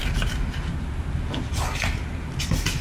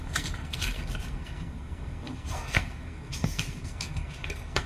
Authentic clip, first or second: first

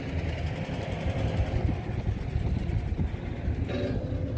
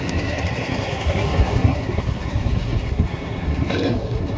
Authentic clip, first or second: first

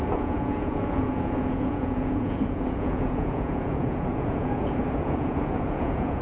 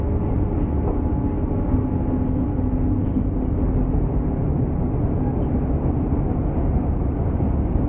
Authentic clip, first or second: second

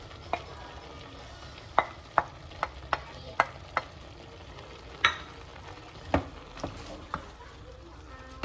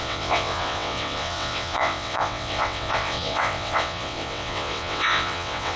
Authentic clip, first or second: first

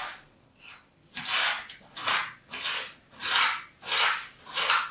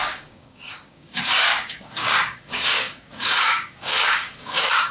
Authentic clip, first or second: first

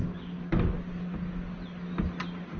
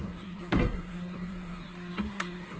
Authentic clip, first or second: first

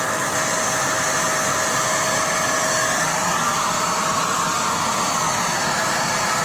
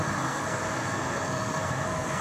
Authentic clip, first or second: first